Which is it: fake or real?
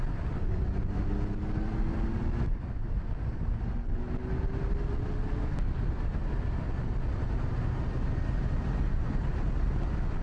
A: real